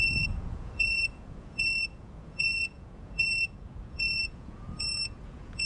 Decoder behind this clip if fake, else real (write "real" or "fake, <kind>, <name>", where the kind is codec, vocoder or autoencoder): fake, vocoder, Vocos